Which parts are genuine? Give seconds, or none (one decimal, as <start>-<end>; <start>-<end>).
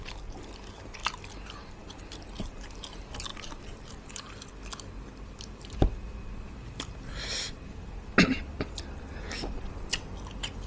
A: 0.0-10.7